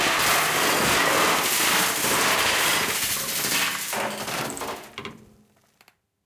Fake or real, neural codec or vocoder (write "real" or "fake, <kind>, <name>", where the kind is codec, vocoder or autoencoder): real